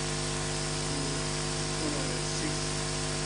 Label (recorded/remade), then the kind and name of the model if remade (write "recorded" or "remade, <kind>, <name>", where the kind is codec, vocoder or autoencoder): remade, vocoder, BigVGAN v2